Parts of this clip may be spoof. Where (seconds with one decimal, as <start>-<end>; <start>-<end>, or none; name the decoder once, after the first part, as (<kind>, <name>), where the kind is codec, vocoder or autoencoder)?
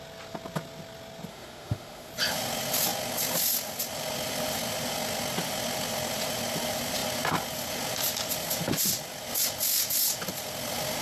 1.3-2.1 (autoencoder, DAC-VAE)